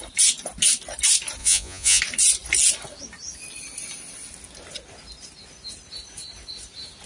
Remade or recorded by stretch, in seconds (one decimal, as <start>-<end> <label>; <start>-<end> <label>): 0.0-1.4 recorded; 1.4-2.0 remade; 2.0-7.1 recorded